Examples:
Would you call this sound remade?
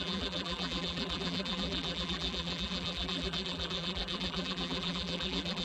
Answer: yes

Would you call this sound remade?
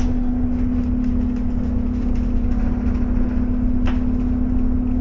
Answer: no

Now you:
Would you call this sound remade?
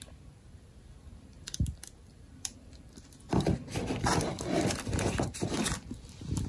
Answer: yes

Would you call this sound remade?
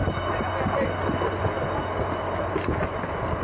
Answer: no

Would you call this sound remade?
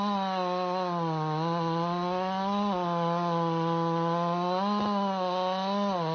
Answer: no